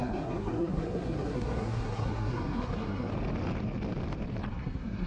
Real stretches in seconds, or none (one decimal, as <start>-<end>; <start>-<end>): 3.1-4.5